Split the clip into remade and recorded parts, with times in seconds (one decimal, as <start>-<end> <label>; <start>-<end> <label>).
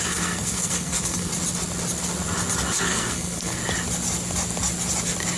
0.0-1.3 remade; 1.3-2.8 recorded; 2.8-3.6 remade; 3.6-5.4 recorded